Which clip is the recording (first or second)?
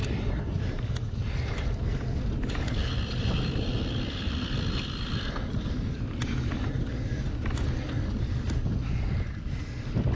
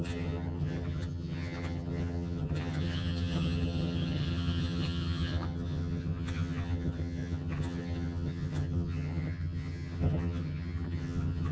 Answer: first